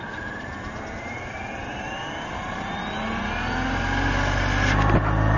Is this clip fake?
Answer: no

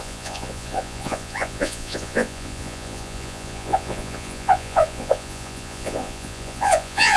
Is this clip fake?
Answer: yes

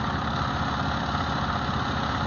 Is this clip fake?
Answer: no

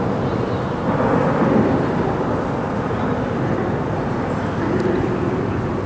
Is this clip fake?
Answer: no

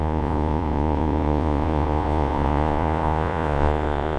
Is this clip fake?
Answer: yes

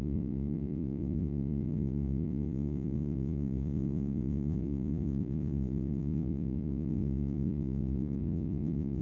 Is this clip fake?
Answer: yes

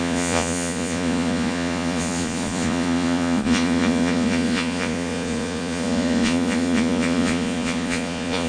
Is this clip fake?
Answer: yes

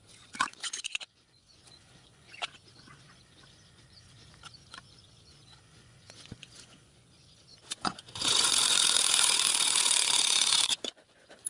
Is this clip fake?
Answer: yes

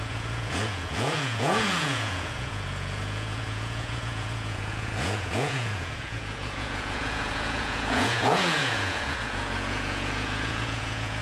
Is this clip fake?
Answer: yes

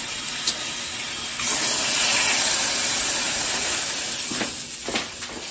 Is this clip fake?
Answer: no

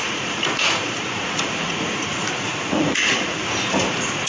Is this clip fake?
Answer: yes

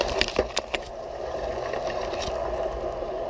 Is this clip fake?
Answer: no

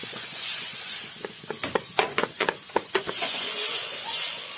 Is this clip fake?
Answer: yes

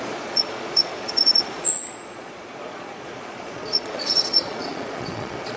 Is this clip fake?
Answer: yes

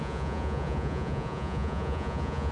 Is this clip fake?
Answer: yes